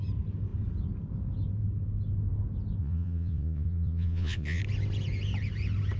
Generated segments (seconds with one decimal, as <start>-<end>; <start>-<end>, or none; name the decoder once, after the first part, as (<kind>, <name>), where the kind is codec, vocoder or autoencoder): 2.8-4.6 (vocoder, Vocos)